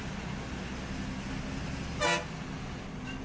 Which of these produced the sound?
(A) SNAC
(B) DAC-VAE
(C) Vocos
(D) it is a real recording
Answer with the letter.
D